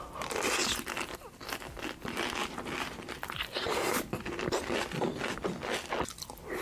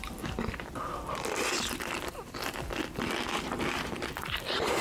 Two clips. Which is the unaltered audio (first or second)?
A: first